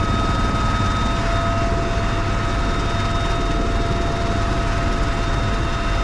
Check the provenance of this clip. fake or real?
real